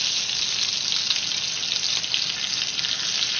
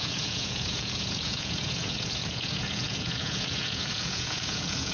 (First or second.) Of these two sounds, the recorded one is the first